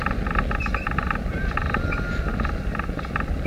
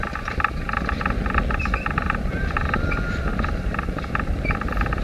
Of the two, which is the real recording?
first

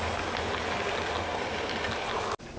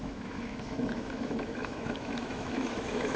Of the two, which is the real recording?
first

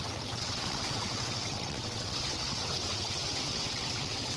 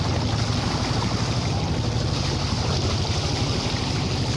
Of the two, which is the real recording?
second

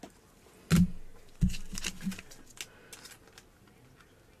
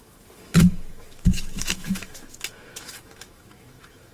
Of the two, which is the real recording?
first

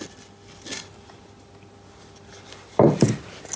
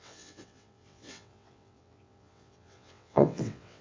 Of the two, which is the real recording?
first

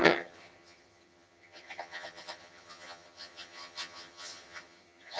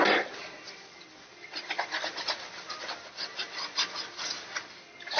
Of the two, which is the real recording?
second